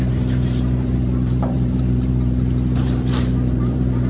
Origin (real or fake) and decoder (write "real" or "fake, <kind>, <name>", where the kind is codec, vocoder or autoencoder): fake, vocoder, BigVGAN v2